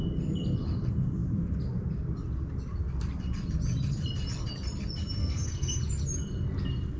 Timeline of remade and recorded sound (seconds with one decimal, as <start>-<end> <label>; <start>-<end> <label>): 0.0-5.2 recorded; 5.2-5.8 remade; 5.8-7.0 recorded